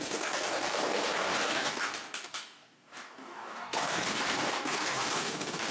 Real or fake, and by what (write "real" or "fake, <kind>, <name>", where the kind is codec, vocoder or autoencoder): fake, codec, DAC